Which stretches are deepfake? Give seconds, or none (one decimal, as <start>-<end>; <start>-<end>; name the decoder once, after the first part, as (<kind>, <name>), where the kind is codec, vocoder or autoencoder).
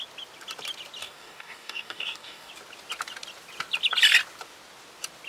1.0-2.5 (codec, DAC)